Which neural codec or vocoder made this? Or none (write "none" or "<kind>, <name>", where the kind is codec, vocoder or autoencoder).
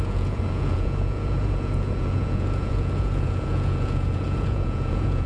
vocoder, Vocos